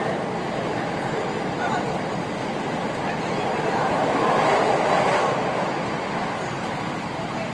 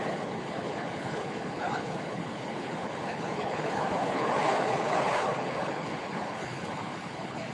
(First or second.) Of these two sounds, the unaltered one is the first